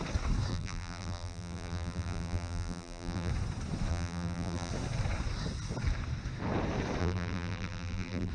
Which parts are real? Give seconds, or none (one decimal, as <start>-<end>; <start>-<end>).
0.0-0.5; 3.3-3.9; 4.7-7.0